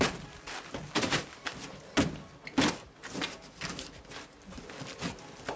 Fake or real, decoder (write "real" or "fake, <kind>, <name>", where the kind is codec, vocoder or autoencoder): real